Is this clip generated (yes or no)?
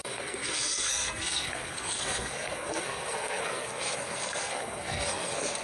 yes